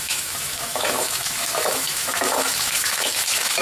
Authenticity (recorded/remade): remade